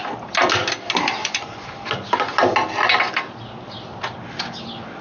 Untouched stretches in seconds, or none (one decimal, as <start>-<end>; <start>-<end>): 0.0-1.2; 1.7-5.0